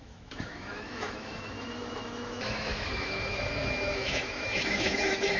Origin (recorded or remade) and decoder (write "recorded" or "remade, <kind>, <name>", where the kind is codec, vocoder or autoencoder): remade, autoencoder, DAC-VAE